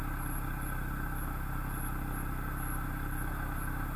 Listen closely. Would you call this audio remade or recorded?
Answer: recorded